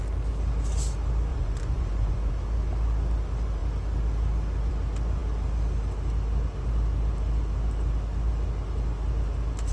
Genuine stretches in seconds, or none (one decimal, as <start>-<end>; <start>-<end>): 0.0-1.3; 2.3-9.7